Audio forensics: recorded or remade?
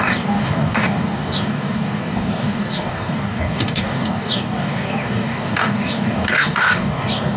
remade